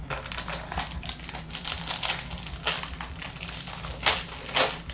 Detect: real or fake real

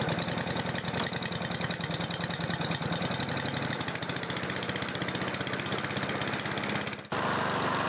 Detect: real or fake real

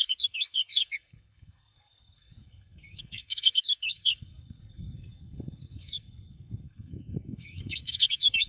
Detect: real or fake fake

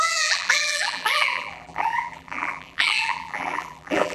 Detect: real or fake fake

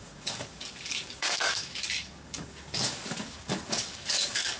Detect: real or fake fake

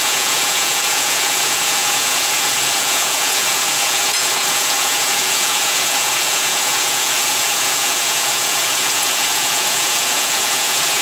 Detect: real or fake fake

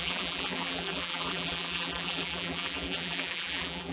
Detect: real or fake fake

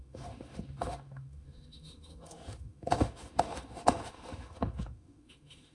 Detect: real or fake fake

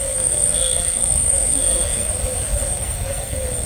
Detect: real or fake fake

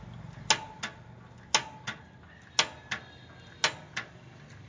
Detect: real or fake real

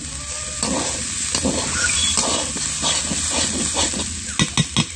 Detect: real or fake real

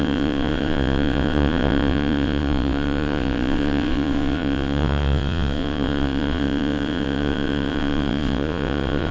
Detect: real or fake fake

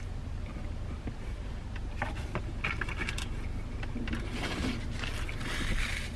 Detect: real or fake real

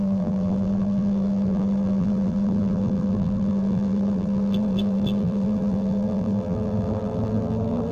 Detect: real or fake fake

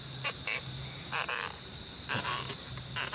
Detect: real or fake fake